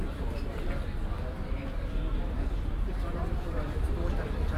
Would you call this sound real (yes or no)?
yes